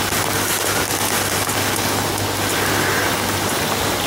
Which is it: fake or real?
real